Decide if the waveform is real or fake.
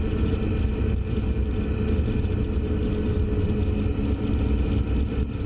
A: real